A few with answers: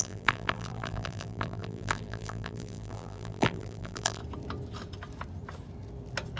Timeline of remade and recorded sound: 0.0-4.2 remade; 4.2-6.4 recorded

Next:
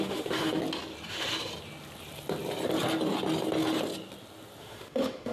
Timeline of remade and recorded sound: 0.0-0.6 remade; 0.6-1.1 recorded; 1.1-1.5 remade; 1.5-4.6 recorded; 4.6-5.3 remade

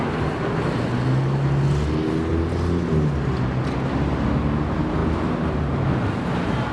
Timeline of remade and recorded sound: 0.0-6.7 recorded

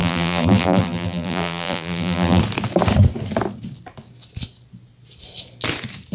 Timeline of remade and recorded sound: 0.0-2.4 remade; 2.4-6.1 recorded

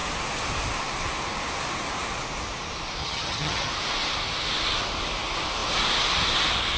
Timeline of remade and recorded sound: 0.0-3.0 recorded; 3.0-3.7 remade; 3.7-6.8 recorded

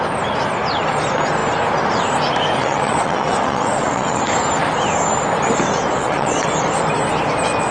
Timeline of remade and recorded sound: 0.0-2.6 recorded; 2.6-4.2 remade; 4.2-6.0 recorded; 6.0-6.5 remade; 6.5-7.7 recorded

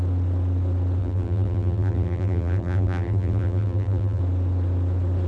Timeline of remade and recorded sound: 0.0-1.0 recorded; 1.0-4.2 remade; 4.2-5.3 recorded

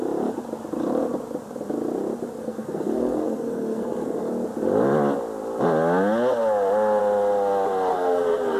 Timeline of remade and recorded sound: 0.0-2.4 recorded; 2.4-4.3 remade; 4.3-7.9 recorded; 7.9-8.6 remade